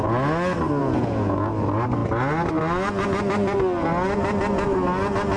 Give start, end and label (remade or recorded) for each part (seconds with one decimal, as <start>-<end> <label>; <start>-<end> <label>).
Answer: 0.0-0.8 recorded; 0.8-1.5 remade; 1.5-5.4 recorded

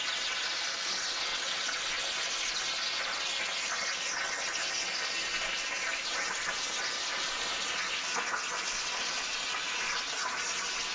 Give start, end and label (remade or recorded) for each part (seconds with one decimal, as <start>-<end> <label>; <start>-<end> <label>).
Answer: 0.0-1.3 recorded; 1.3-1.8 remade; 1.8-10.9 recorded

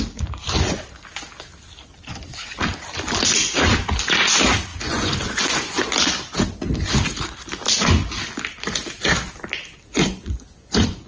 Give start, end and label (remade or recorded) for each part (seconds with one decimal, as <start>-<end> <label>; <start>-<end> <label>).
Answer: 0.0-4.7 recorded; 4.7-5.8 remade; 5.8-9.9 recorded; 9.9-11.1 remade

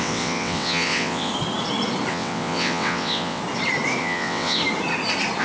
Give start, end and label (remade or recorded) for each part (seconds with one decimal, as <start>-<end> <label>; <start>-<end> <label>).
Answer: 0.0-1.3 remade; 1.3-2.1 recorded; 2.1-3.4 remade; 3.4-4.0 recorded; 4.0-4.6 remade; 4.6-5.4 recorded

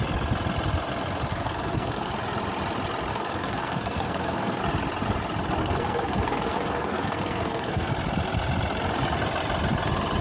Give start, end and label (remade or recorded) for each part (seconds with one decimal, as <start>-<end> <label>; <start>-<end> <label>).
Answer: 0.0-1.3 recorded; 1.3-2.1 remade; 2.1-3.1 recorded; 3.1-4.6 remade; 4.6-5.6 recorded; 5.6-7.9 remade; 7.9-10.2 recorded

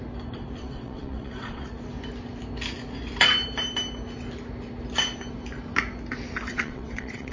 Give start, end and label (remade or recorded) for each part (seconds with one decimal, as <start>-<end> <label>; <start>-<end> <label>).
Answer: 0.0-0.6 recorded; 0.6-1.7 remade; 1.7-6.5 recorded; 6.5-7.3 remade